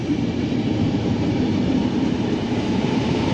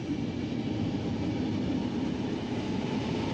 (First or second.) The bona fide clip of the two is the second